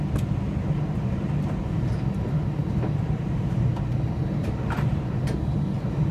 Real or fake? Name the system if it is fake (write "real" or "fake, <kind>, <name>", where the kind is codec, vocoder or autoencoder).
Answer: real